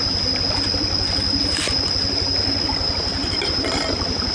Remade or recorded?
recorded